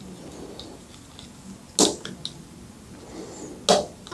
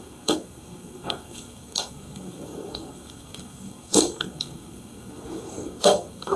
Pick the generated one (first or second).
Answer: second